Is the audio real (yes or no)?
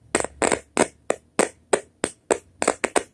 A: yes